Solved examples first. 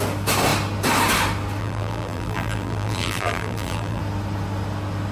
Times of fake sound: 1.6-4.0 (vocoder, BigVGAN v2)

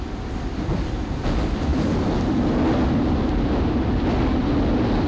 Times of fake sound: none